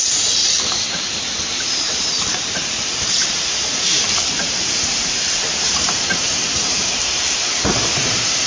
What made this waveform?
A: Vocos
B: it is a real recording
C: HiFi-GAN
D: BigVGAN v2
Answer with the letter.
D